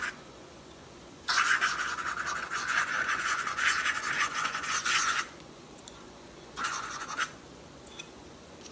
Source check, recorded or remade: remade